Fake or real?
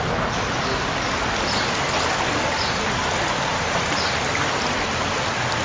real